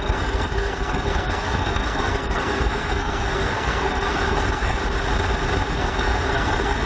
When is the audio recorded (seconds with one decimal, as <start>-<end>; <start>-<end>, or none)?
4.8-5.7